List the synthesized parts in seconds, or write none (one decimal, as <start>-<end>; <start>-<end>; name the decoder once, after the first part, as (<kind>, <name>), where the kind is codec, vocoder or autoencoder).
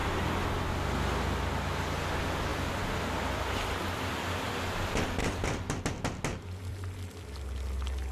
2.5-4.5 (vocoder, BigVGAN v2); 5.2-5.8; 6.7-7.4